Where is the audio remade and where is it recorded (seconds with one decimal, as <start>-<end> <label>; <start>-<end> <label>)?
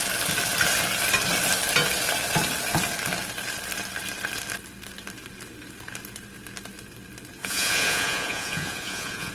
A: 0.0-7.4 recorded; 7.4-9.3 remade